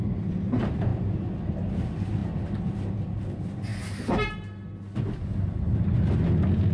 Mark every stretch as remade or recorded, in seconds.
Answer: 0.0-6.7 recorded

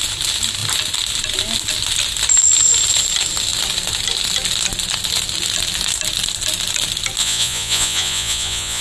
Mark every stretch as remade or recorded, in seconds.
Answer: 0.0-7.2 recorded; 7.2-8.8 remade